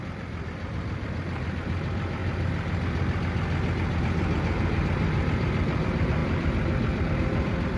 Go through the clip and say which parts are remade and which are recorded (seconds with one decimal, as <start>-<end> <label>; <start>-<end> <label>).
0.0-2.2 remade; 2.2-4.0 recorded; 4.0-7.8 remade